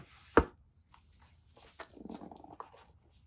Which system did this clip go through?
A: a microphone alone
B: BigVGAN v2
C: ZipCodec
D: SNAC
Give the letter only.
A